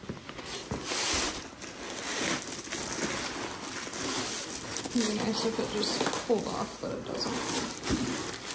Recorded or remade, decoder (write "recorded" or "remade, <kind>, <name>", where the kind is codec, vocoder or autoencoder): recorded